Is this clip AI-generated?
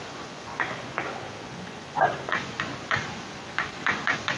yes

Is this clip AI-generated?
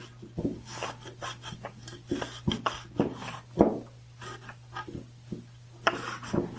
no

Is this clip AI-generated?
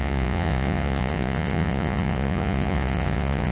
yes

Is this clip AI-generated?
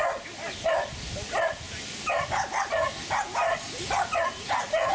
no